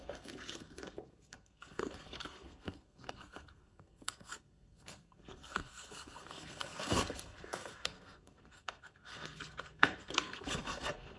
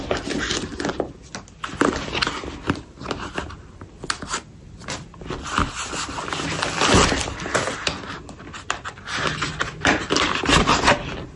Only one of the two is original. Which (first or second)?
second